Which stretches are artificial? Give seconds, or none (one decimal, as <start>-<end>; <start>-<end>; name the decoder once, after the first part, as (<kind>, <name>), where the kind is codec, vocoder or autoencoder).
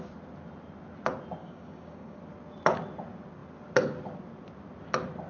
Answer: 1.4-2.2 (codec, DAC)